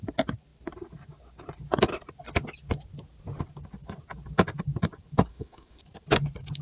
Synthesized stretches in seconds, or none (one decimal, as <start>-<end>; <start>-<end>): 5.3-5.8